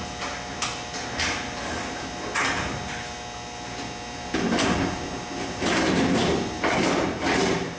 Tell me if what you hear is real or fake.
real